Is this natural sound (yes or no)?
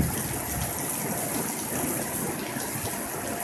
yes